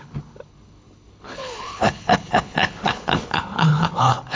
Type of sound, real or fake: fake